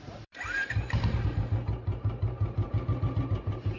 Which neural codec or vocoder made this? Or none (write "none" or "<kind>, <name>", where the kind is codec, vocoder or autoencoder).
vocoder, BigVGAN v2